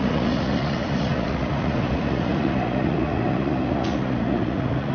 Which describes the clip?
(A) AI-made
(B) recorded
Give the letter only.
A